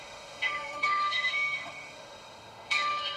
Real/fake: fake